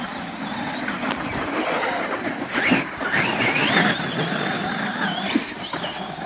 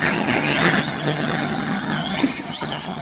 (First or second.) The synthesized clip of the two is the second